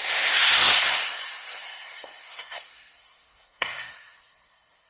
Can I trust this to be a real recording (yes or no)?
no